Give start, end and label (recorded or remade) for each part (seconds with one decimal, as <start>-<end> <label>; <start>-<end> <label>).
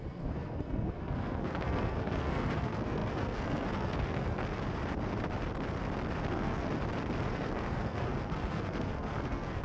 0.0-4.4 remade; 4.4-6.3 recorded; 6.3-6.8 remade; 6.8-7.3 recorded; 7.3-9.6 remade